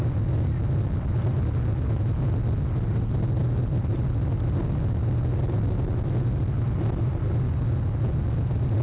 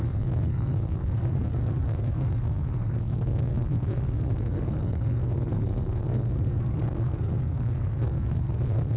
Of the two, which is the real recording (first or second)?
first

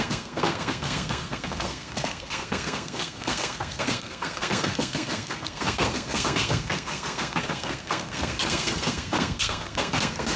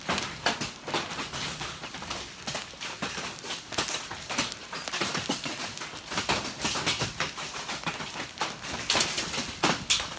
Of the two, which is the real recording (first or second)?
second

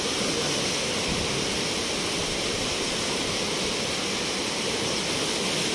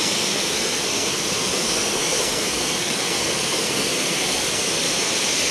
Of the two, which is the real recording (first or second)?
first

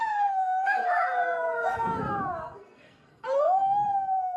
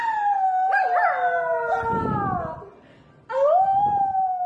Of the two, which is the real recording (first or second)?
second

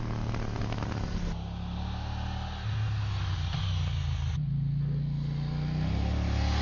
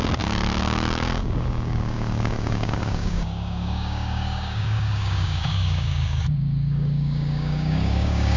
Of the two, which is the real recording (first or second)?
first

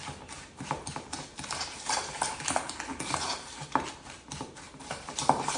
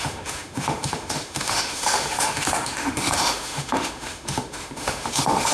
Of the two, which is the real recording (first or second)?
first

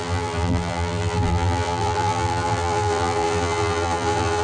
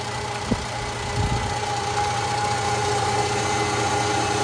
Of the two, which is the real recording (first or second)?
second